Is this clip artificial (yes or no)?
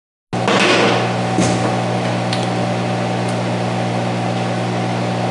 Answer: no